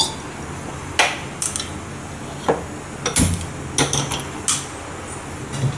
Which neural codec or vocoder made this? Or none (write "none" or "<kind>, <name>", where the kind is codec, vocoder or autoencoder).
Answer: none